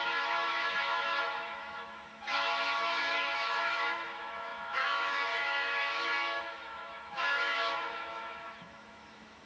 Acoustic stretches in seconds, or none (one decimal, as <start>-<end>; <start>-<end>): none